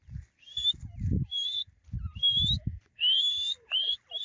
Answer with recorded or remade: recorded